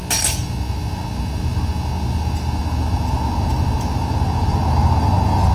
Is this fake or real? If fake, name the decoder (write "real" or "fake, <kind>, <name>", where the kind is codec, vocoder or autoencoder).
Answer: real